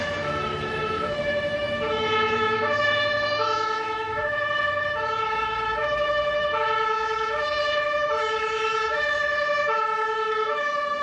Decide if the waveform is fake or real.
fake